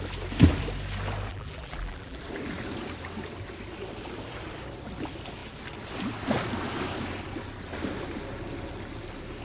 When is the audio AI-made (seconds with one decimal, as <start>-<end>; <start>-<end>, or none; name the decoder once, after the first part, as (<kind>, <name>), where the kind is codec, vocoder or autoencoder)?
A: 1.3-2.2 (vocoder, BigVGAN v2)